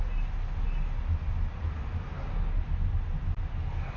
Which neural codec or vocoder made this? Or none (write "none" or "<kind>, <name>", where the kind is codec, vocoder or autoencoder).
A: none